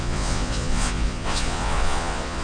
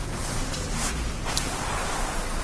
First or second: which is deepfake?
first